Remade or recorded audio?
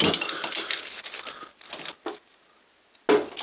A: recorded